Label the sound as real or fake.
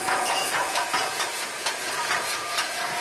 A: fake